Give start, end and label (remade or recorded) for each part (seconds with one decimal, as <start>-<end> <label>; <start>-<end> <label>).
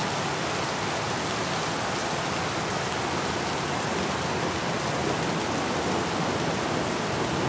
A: 0.0-7.5 recorded